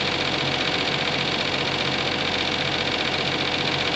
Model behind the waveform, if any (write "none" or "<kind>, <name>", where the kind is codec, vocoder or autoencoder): none